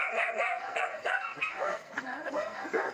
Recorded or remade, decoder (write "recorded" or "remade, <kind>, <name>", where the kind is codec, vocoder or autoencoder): remade, codec, SNAC